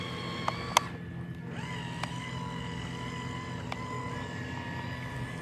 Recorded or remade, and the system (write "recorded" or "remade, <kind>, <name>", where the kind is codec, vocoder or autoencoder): recorded